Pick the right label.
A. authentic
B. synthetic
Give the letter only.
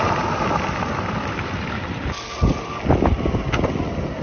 A